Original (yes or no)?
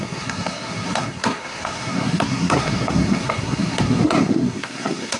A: no